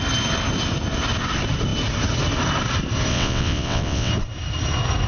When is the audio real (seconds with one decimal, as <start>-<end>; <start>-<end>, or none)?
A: 0.0-3.1; 4.1-5.1